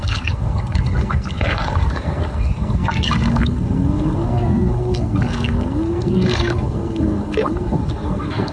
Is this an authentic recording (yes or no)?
no